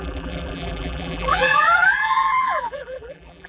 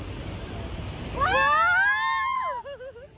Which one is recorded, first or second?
second